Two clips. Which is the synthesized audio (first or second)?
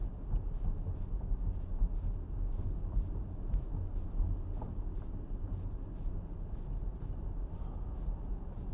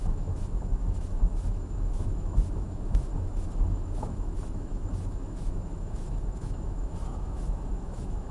second